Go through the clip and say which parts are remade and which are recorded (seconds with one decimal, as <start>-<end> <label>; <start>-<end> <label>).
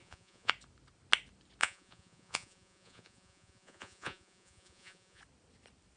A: 0.0-0.5 remade; 0.5-1.6 recorded; 1.6-5.2 remade; 5.2-6.0 recorded